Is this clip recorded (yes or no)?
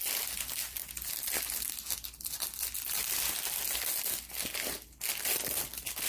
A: yes